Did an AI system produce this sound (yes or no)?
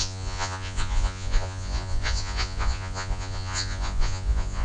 yes